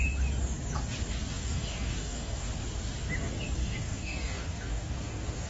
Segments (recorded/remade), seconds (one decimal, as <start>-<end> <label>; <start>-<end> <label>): 0.0-1.3 recorded; 1.3-2.5 remade; 2.5-3.6 recorded; 3.6-5.5 remade